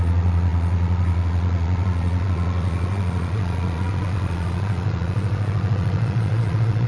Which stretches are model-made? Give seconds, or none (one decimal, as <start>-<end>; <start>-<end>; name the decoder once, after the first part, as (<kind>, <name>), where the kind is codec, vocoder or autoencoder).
0.0-6.9 (vocoder, Vocos)